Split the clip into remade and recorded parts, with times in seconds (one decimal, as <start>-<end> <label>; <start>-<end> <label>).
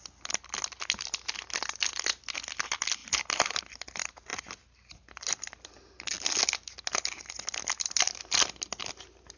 0.0-9.4 recorded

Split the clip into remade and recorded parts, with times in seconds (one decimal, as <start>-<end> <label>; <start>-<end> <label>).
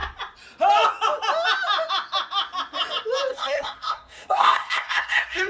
0.0-3.3 recorded; 3.3-5.5 remade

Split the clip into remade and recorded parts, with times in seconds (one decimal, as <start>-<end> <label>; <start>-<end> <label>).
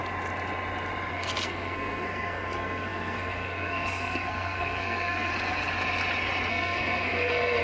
0.0-1.1 recorded; 1.1-5.3 remade; 5.3-6.5 recorded; 6.5-7.6 remade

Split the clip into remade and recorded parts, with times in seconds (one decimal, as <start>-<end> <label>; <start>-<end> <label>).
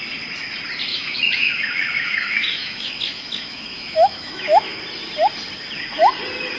0.0-0.9 recorded; 0.9-4.8 remade; 4.8-6.6 recorded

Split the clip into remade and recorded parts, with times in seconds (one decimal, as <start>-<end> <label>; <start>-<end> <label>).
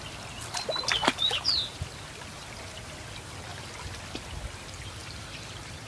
0.0-5.0 recorded; 5.0-5.9 remade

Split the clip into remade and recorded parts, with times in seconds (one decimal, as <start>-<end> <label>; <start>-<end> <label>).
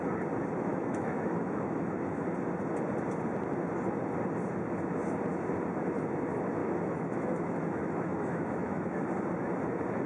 0.0-0.7 recorded; 0.7-1.9 remade; 1.9-6.6 recorded; 6.6-9.0 remade; 9.0-10.1 recorded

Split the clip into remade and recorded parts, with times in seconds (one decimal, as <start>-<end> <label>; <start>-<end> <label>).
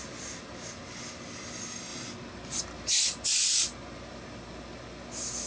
0.0-5.5 recorded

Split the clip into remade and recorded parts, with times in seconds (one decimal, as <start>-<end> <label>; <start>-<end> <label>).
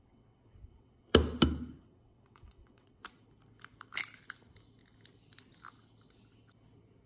0.0-1.1 remade; 1.1-1.8 recorded; 1.8-3.0 remade; 3.0-7.1 recorded